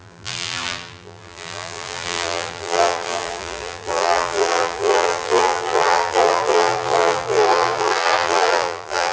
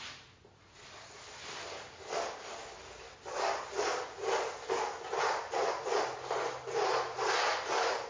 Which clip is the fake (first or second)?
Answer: first